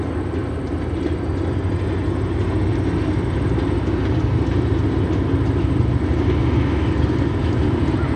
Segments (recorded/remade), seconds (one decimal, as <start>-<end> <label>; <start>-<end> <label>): 0.0-8.2 recorded